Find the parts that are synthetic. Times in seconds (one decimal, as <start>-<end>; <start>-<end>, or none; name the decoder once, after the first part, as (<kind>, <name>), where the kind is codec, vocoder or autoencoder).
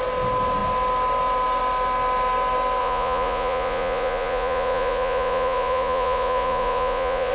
2.8-7.3 (vocoder, Vocos)